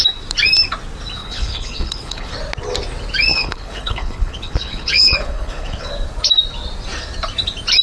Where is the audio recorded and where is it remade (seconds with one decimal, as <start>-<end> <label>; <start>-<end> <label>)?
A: 0.0-1.2 recorded; 1.2-2.3 remade; 2.3-3.3 recorded; 3.3-5.9 remade; 5.9-7.8 recorded